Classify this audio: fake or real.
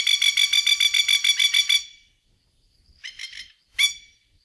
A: real